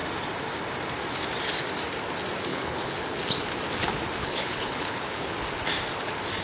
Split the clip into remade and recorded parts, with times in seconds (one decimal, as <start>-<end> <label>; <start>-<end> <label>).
0.0-2.5 recorded; 2.5-3.2 remade; 3.2-4.2 recorded; 4.2-5.3 remade; 5.3-6.4 recorded